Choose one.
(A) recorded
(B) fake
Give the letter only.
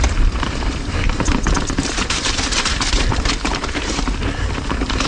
B